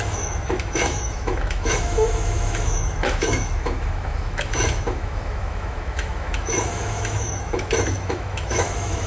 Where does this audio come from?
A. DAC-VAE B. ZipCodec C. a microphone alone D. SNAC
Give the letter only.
A